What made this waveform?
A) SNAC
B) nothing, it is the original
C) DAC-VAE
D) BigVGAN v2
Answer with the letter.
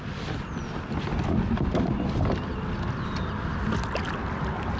B